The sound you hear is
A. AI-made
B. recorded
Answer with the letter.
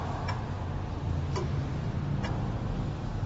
B